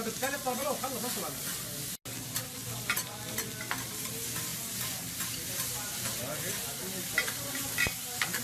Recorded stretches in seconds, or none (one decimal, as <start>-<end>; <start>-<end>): 0.0-8.4